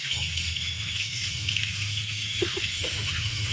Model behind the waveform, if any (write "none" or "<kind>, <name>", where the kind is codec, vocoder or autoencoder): autoencoder, DAC-VAE